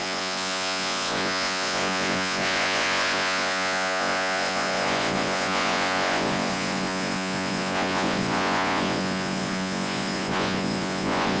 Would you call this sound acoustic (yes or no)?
no